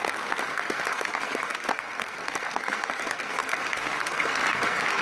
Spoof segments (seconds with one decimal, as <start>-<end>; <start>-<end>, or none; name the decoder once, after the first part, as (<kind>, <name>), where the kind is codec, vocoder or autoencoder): 0.0-5.0 (codec, SNAC)